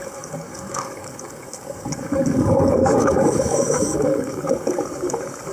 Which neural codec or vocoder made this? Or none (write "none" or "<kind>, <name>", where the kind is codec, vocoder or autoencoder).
codec, DAC